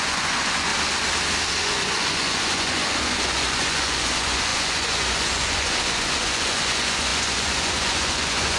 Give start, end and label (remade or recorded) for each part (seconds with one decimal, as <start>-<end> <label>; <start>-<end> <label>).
0.0-0.7 remade; 0.7-1.6 recorded; 1.6-8.6 remade